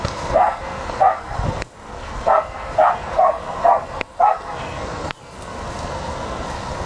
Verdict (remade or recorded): remade